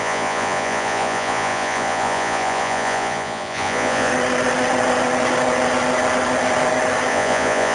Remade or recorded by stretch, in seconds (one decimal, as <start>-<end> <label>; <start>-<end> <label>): 0.0-4.1 remade; 4.1-7.1 recorded; 7.1-7.7 remade